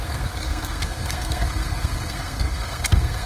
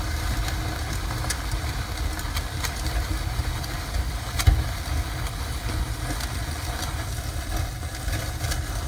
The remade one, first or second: first